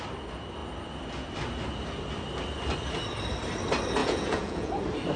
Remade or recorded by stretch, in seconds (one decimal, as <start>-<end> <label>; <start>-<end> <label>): 0.0-4.0 recorded; 4.0-4.7 remade; 4.7-5.2 recorded